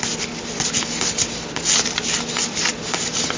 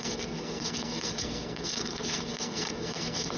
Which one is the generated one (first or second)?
second